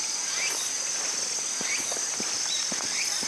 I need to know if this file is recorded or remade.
recorded